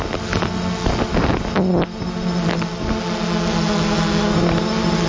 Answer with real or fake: real